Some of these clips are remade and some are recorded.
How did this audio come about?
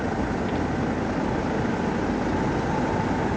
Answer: recorded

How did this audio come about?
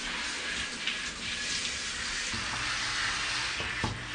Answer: recorded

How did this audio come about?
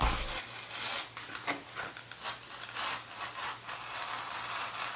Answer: recorded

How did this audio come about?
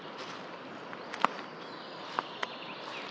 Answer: recorded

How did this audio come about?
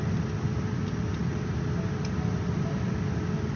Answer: recorded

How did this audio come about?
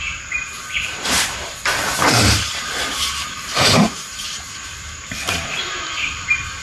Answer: remade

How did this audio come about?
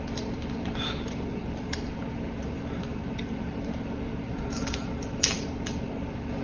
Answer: remade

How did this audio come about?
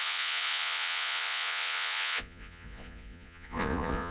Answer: remade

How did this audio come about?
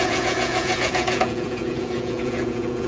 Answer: remade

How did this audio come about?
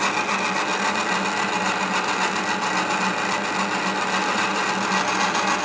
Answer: recorded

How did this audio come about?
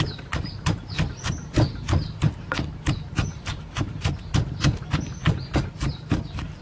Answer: recorded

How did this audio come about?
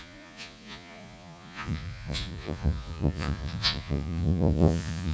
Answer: remade